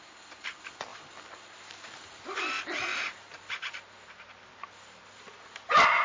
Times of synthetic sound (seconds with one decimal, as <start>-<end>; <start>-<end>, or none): 0.9-2.4; 2.9-3.5